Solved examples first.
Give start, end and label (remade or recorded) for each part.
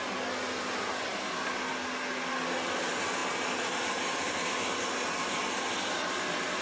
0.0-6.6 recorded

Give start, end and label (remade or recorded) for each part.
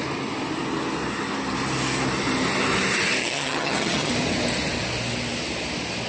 0.0-3.2 recorded; 3.2-4.1 remade; 4.1-6.1 recorded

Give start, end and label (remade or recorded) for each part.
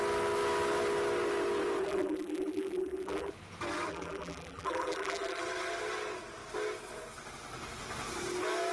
0.0-1.8 recorded; 1.8-3.3 remade; 3.3-3.9 recorded; 3.9-5.4 remade; 5.4-8.7 recorded